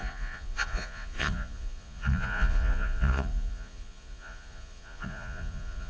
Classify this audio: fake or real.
fake